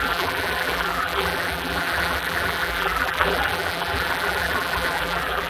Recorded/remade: remade